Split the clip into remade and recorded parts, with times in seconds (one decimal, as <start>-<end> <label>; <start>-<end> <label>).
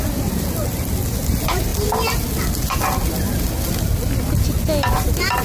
0.0-5.4 recorded